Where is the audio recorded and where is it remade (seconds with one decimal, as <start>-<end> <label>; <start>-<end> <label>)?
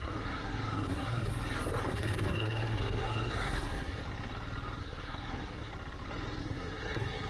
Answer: 0.0-1.3 remade; 1.3-1.9 recorded; 1.9-4.0 remade; 4.0-4.8 recorded; 4.8-5.7 remade; 5.7-6.4 recorded; 6.4-7.3 remade